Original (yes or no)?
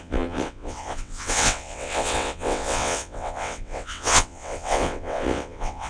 no